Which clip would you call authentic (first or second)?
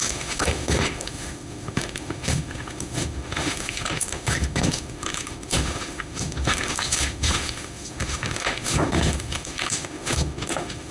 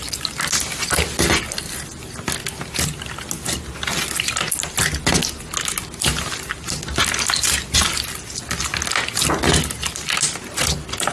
second